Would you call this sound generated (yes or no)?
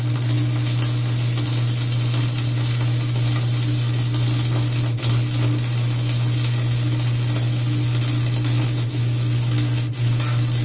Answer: no